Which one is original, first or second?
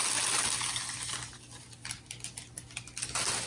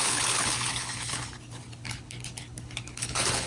first